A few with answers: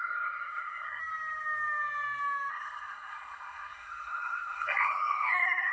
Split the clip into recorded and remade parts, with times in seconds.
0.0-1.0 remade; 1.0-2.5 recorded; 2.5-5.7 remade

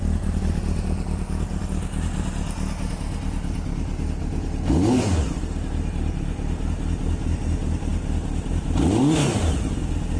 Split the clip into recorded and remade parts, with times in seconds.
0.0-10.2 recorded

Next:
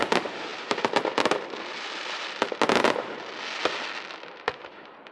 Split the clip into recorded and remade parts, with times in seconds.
0.0-0.5 recorded; 0.5-3.4 remade; 3.4-5.1 recorded

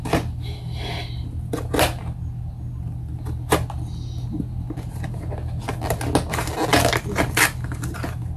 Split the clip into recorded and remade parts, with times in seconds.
0.0-8.4 recorded

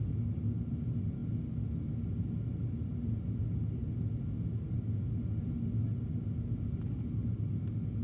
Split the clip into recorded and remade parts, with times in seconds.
0.0-8.0 recorded

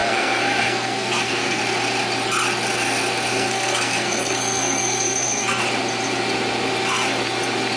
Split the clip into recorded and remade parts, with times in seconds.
0.0-1.6 remade; 1.6-3.3 recorded; 3.3-5.6 remade; 5.6-7.8 recorded